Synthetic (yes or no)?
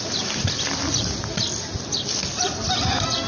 no